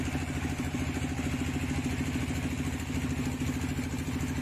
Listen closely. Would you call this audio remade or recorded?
recorded